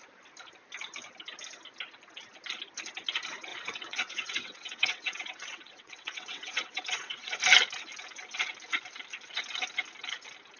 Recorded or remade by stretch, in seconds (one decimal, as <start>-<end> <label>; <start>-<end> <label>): 0.0-3.5 recorded; 3.5-7.4 remade; 7.4-10.6 recorded